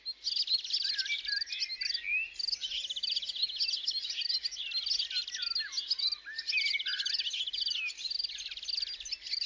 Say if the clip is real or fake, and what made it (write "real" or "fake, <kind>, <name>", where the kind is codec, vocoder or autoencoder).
real